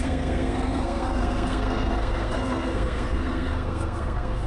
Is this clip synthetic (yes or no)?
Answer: yes